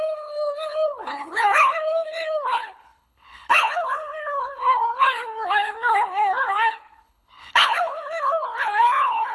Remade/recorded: remade